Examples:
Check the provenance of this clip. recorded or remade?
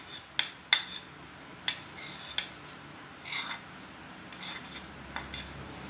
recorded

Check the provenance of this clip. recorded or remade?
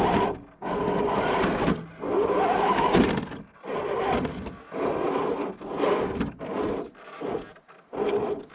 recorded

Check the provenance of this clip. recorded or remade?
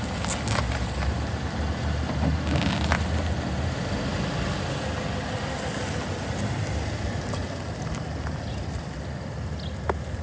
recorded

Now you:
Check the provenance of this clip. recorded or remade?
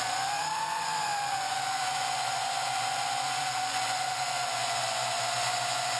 remade